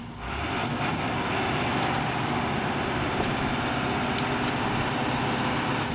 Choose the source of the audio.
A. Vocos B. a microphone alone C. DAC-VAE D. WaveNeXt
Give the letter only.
B